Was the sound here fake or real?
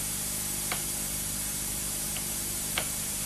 fake